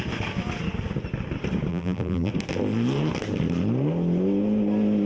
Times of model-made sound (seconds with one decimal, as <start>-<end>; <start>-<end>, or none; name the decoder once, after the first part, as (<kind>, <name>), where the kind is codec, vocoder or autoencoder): 1.7-2.3 (vocoder, BigVGAN v2)